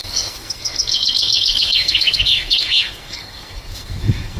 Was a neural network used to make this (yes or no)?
yes